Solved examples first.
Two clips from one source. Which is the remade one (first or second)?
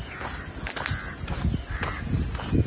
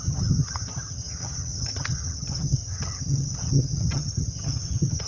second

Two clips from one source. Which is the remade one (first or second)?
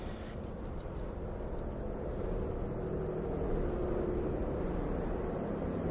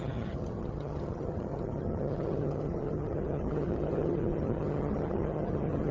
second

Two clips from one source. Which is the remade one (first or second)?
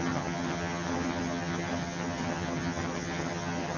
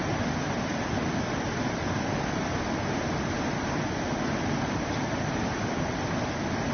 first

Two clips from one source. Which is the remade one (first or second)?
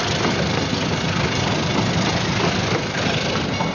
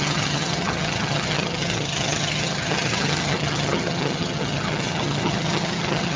second